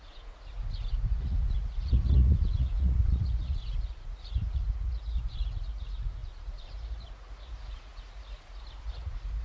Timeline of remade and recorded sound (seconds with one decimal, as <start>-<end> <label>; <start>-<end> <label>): 0.0-9.4 remade